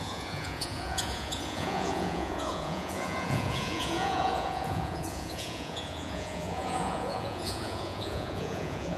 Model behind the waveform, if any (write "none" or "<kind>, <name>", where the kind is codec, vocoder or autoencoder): vocoder, Vocos